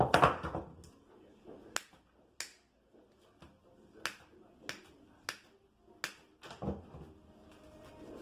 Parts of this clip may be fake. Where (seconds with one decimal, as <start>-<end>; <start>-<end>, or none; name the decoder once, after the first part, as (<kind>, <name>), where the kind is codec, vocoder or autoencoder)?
none